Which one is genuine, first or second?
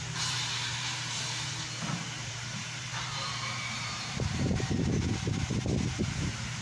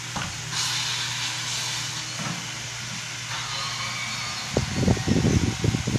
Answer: second